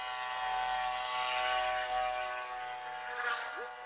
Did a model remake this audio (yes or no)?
no